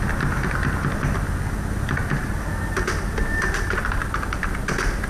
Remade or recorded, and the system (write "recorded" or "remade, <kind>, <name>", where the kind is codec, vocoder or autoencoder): remade, vocoder, BigVGAN v2